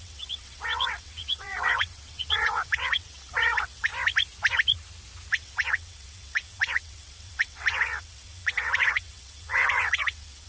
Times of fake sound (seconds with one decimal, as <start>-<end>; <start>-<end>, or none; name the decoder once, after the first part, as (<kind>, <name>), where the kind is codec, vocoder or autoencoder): 0.0-3.9 (vocoder, WaveNeXt); 5.3-10.5